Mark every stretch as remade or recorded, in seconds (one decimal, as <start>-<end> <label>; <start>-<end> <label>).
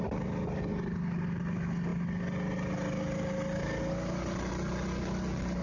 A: 0.0-5.6 recorded